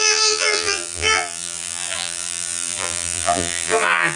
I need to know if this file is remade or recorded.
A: remade